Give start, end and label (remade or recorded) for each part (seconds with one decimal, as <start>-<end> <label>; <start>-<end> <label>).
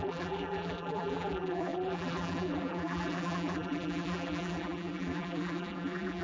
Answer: 0.0-6.2 remade